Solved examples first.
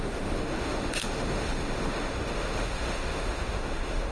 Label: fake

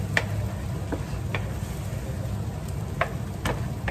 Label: real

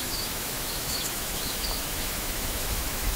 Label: fake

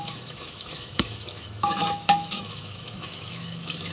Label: fake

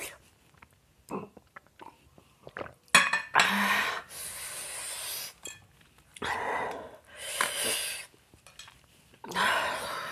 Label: real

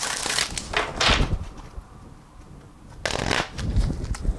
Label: real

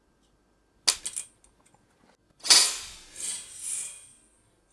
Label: real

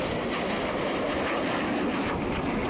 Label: real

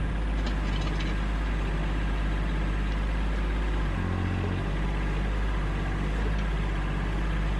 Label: real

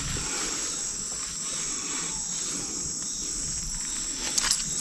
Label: real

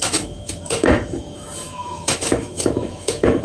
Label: fake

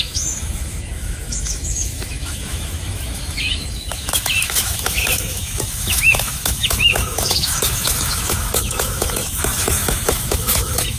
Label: fake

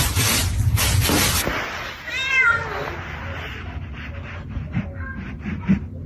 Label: real